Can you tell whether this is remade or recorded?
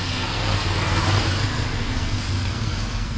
remade